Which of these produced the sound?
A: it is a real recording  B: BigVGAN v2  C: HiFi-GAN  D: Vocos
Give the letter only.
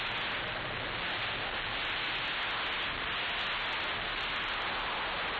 A